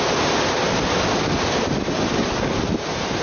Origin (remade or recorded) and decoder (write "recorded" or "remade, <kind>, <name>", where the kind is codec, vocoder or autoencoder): recorded